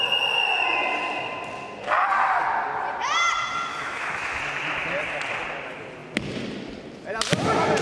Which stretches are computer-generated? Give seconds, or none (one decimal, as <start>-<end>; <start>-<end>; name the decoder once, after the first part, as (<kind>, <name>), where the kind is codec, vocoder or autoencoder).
3.7-4.4 (autoencoder, DAC-VAE)